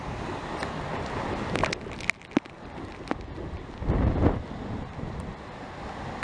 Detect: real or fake real